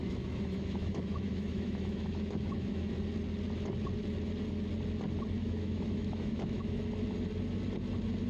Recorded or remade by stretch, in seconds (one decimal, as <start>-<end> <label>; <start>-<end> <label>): 0.0-2.9 remade; 2.9-5.4 recorded; 5.4-6.8 remade; 6.8-8.3 recorded

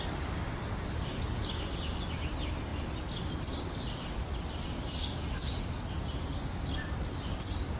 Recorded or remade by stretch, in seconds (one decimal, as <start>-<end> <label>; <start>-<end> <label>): 0.0-7.8 recorded

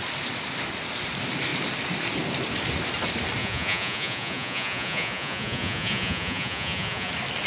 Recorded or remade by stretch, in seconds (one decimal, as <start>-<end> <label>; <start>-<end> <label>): 0.0-3.4 recorded; 3.4-7.1 remade; 7.1-7.5 recorded

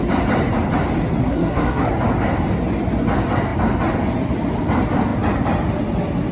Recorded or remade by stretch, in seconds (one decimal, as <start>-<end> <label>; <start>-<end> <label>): 0.0-1.2 recorded; 1.2-1.9 remade; 1.9-6.3 recorded

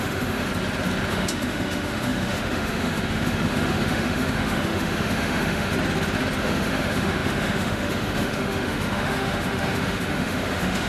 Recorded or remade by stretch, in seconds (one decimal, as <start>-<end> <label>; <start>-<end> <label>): 0.0-0.5 remade; 0.5-1.1 recorded; 1.1-5.7 remade; 5.7-6.4 recorded; 6.4-10.9 remade

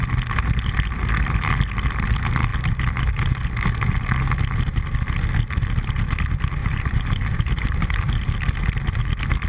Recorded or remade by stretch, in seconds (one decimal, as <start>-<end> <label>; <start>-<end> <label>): 0.0-6.6 recorded; 6.6-8.2 remade; 8.2-9.5 recorded